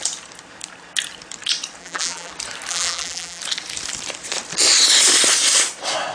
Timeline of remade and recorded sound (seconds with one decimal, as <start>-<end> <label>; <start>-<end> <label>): 0.0-1.8 recorded; 1.8-2.3 remade; 2.3-2.7 recorded; 2.7-3.4 remade; 3.4-6.1 recorded